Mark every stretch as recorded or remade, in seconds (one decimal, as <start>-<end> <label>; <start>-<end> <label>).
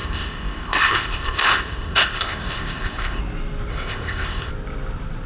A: 0.0-3.2 remade; 3.2-3.7 recorded; 3.7-4.5 remade; 4.5-5.3 recorded